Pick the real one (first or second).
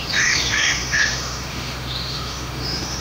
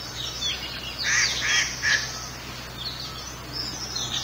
second